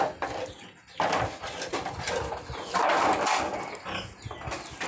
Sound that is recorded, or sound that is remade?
recorded